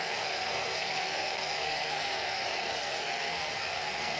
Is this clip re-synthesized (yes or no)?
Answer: yes